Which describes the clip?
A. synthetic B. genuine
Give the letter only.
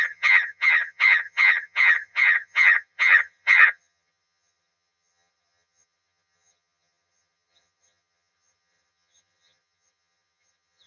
A